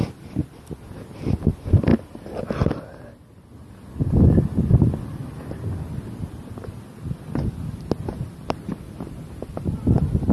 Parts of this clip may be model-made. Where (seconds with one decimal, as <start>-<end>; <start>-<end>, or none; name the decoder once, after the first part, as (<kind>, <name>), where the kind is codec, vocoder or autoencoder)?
none